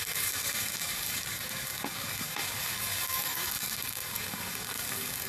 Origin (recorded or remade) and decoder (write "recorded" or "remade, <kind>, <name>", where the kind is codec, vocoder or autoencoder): remade, codec, DAC